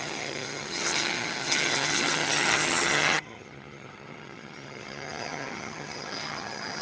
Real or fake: fake